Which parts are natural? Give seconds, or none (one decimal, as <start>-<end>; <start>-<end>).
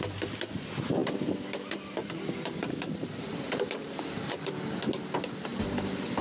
0.0-1.0; 4.0-5.5